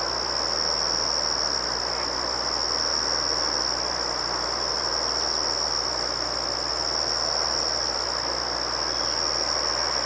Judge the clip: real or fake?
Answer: real